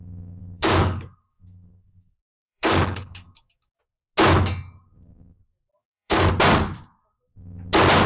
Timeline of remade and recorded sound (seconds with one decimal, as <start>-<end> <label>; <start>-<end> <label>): 0.0-0.4 recorded; 0.4-3.8 remade; 3.8-5.7 recorded; 5.7-6.3 remade; 6.3-8.1 recorded